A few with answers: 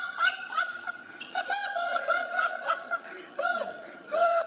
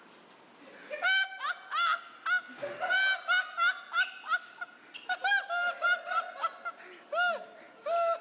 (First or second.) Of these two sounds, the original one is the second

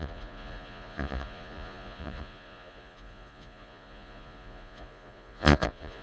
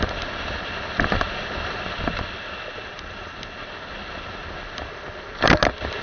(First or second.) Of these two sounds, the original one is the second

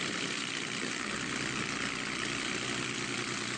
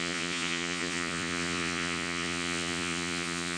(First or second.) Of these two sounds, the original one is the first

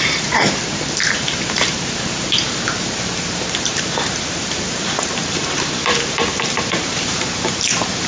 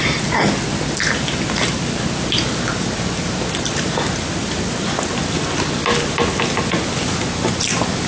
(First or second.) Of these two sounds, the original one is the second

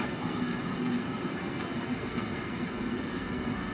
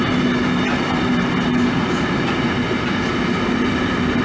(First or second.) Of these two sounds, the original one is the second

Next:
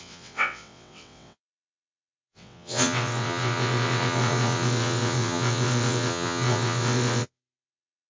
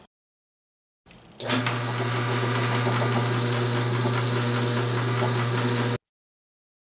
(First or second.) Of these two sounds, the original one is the second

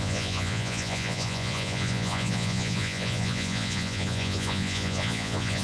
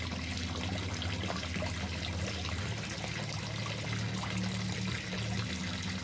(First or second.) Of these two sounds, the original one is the second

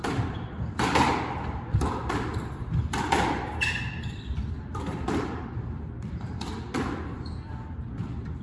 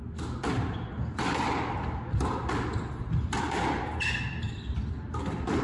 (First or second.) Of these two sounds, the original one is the second